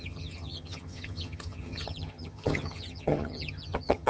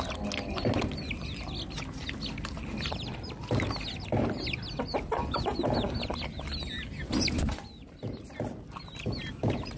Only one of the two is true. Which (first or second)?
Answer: second